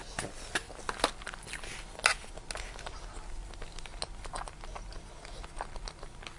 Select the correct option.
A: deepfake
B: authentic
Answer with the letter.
B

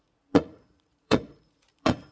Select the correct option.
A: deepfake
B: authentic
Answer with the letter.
A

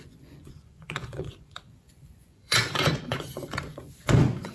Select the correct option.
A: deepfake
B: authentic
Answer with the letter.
A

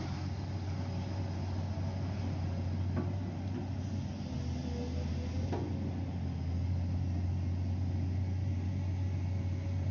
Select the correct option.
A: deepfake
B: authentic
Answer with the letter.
B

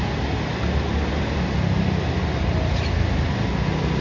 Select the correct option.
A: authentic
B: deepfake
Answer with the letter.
A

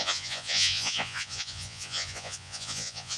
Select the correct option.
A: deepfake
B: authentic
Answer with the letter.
A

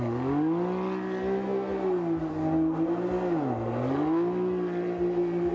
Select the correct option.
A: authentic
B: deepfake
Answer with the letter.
A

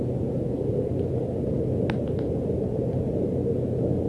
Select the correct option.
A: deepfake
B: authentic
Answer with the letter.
B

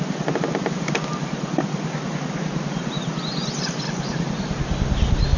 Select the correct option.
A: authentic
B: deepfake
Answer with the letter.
A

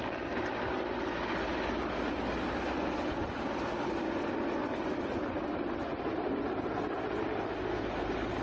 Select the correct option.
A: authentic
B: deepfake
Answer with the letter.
A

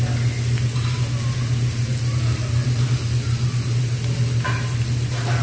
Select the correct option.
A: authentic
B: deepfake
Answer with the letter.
A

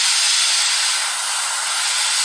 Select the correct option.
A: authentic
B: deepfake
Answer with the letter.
A